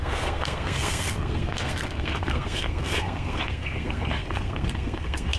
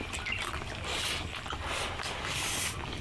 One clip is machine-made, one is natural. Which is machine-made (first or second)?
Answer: first